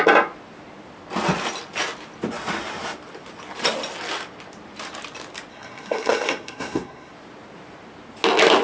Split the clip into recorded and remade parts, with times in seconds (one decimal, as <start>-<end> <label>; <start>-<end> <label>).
0.0-5.5 recorded; 5.5-7.1 remade; 7.1-8.6 recorded